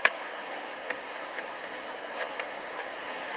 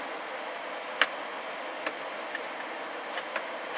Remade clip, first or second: first